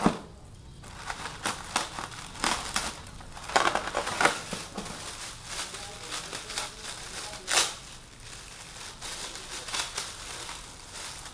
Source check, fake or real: real